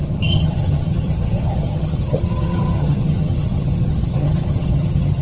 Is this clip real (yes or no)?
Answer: no